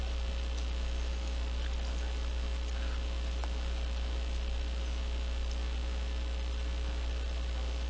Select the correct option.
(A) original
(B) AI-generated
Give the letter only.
A